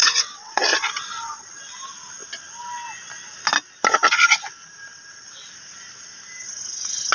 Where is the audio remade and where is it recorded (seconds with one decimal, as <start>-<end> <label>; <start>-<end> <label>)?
0.0-0.6 remade; 0.6-7.1 recorded